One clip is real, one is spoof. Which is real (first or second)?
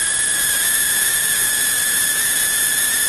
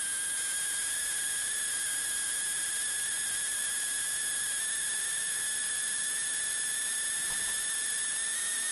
second